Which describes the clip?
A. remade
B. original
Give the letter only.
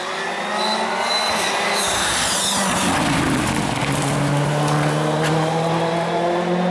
B